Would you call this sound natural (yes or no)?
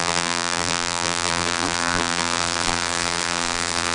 no